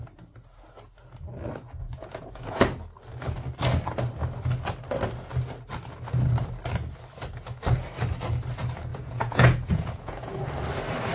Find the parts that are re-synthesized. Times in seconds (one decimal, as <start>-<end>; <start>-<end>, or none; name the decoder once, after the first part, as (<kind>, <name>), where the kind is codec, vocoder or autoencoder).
1.8-2.6 (vocoder, Vocos); 8.9-10.3